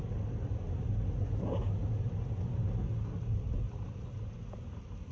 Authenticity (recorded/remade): recorded